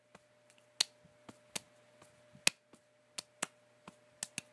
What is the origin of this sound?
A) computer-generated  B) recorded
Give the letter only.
B